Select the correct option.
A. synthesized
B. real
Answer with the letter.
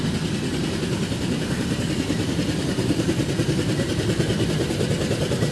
B